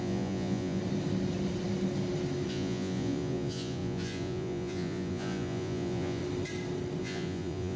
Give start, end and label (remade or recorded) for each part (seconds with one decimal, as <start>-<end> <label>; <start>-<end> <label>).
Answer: 0.0-0.8 remade; 0.8-2.5 recorded; 2.5-6.2 remade; 6.2-7.0 recorded; 7.0-7.8 remade